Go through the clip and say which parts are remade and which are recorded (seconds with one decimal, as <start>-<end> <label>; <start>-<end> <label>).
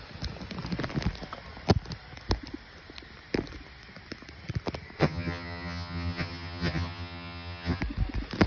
0.0-5.0 recorded; 5.0-7.8 remade; 7.8-8.5 recorded